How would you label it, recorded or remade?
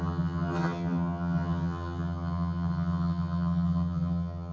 remade